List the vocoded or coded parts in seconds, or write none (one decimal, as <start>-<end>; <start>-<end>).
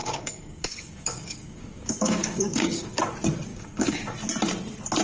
0.0-3.0; 3.5-4.0